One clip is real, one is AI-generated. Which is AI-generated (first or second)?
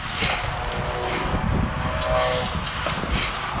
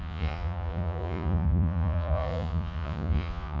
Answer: second